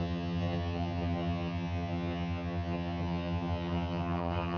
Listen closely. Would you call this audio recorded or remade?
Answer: remade